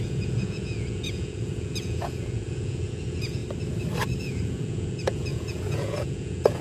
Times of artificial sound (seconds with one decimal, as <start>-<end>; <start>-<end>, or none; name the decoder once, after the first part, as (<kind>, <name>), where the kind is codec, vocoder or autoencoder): 0.0-3.4 (vocoder, Vocos); 4.2-6.6